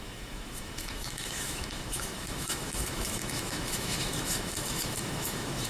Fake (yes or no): yes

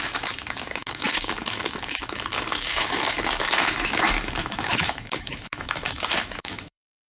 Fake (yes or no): yes